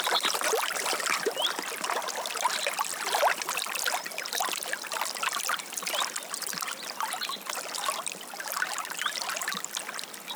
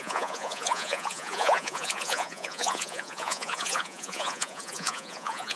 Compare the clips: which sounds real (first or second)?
first